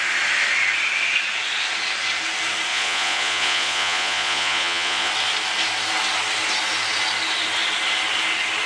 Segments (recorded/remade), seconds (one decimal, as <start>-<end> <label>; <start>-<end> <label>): 0.0-2.7 recorded; 2.7-5.1 remade; 5.1-8.7 recorded